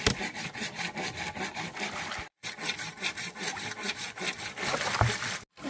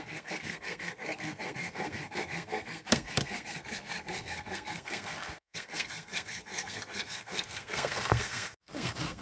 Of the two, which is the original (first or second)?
first